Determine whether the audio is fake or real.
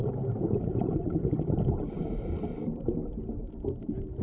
real